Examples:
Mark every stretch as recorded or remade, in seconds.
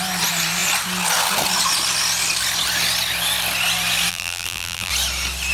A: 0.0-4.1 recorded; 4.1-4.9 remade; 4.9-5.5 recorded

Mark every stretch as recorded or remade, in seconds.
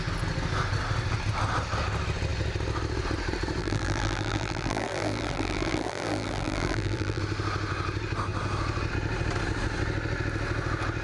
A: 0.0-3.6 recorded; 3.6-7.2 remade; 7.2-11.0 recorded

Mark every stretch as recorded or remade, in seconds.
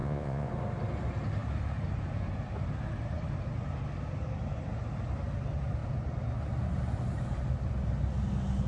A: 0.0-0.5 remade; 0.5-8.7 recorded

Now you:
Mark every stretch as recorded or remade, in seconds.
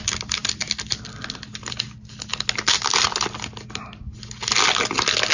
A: 0.0-5.3 recorded